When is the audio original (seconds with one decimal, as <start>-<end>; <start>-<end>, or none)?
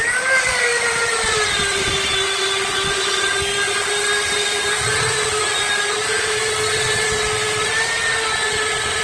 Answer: 0.0-9.0